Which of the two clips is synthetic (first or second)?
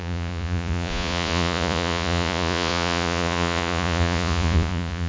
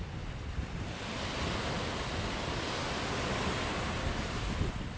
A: first